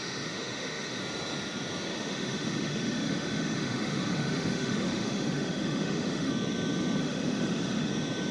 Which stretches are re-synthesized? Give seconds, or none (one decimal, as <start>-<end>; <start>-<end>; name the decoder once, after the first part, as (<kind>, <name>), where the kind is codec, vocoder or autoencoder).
0.0-1.0 (autoencoder, DAC-VAE); 1.9-6.3; 7.0-7.9